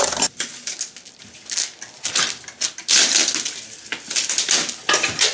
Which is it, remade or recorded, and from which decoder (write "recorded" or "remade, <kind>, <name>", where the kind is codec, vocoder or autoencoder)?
recorded